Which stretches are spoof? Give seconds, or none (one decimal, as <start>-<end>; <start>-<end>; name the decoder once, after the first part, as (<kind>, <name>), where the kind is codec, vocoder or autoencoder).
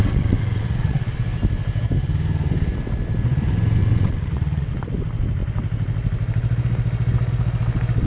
0.0-1.2 (vocoder, WaveNeXt); 3.8-4.7